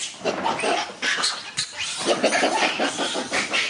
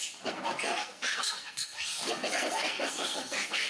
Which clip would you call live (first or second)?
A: first